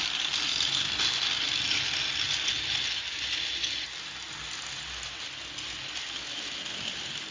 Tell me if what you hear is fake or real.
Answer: real